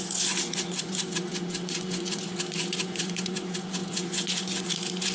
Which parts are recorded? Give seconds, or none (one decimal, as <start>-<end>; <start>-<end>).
none